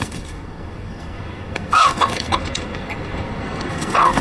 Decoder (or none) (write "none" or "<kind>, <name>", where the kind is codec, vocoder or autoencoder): codec, SNAC